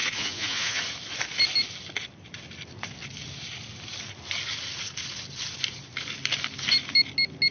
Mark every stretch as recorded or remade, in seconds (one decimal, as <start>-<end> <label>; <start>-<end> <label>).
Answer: 0.0-0.8 remade; 0.8-7.5 recorded